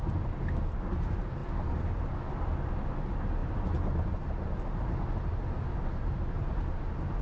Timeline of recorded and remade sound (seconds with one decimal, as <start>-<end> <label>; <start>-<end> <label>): 0.0-7.2 recorded